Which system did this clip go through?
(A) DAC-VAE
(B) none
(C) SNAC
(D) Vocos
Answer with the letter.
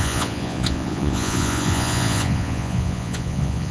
D